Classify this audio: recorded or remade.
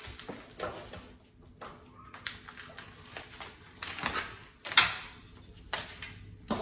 recorded